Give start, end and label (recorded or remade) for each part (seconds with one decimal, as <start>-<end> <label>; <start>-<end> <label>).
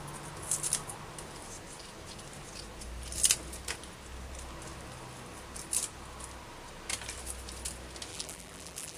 0.0-8.1 recorded; 8.1-9.0 remade